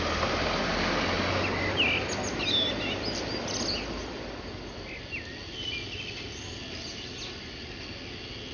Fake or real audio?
real